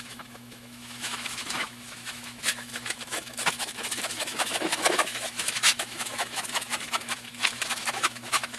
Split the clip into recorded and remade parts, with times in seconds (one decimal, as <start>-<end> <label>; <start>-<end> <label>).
0.0-8.6 remade